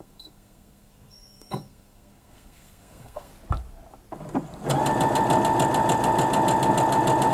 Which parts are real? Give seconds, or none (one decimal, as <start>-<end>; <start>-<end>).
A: 3.3-7.3